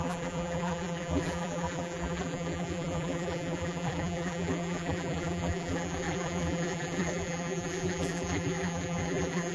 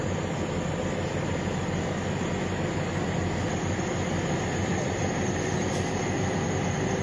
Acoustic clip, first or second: second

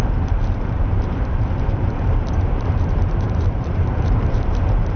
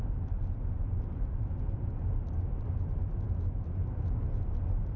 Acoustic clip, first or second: second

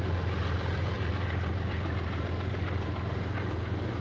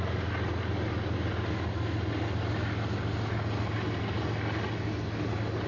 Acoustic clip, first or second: second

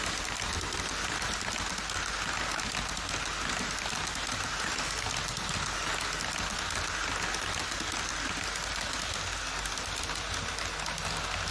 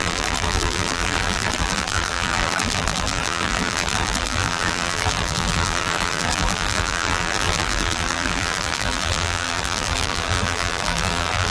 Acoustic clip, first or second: first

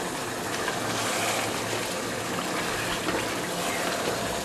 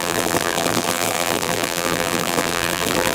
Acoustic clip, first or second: first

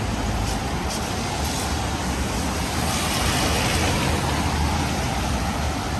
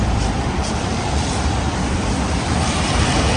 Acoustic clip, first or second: first